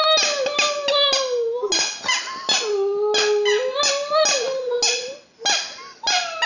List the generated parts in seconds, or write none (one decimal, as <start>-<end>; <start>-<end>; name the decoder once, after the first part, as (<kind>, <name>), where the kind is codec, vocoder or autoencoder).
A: none

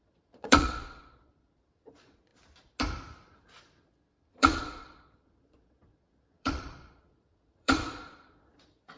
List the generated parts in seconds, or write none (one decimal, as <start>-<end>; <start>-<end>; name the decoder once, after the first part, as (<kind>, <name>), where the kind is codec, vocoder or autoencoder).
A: 0.0-2.3 (vocoder, Vocos); 4.3-9.0

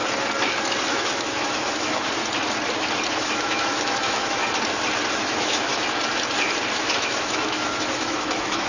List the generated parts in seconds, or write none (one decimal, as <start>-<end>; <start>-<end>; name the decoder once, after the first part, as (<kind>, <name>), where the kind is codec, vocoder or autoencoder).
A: 0.9-2.2 (autoencoder, DAC-VAE); 3.1-4.4; 5.1-5.7; 6.8-8.7

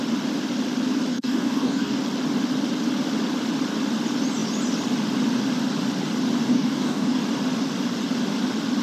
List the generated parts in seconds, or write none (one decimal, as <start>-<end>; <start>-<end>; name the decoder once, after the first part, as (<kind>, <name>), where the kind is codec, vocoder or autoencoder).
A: 1.1-2.0 (codec, DAC); 6.5-7.2

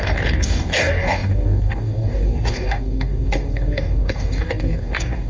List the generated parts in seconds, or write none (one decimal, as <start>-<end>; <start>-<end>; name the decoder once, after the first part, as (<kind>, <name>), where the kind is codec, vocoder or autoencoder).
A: 0.0-5.3 (codec, DAC)